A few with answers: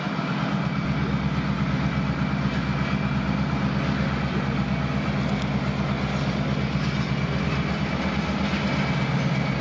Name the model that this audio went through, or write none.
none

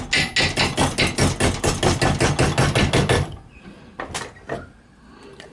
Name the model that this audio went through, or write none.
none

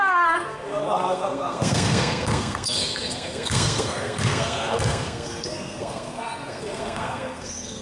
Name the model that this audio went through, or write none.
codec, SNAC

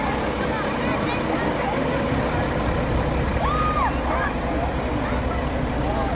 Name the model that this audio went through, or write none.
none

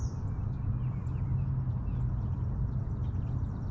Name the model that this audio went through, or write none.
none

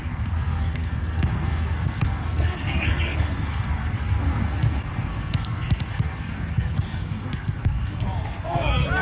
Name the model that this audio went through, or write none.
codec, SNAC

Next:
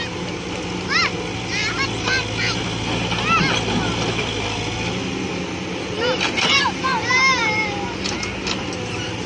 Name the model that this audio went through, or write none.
none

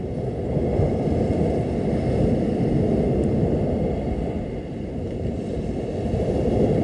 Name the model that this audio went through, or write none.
none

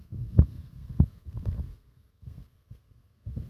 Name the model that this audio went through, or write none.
codec, SNAC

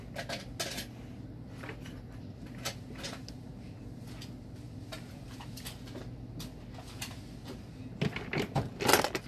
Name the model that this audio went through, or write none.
none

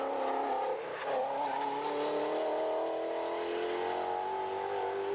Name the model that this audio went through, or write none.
none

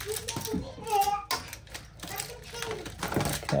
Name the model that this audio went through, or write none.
none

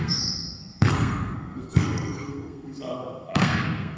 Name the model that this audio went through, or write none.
codec, SNAC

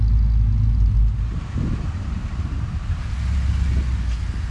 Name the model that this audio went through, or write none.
none